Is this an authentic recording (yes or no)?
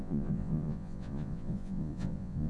no